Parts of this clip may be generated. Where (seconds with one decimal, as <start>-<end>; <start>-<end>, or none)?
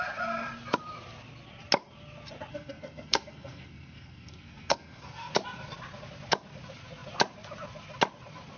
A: 2.5-5.3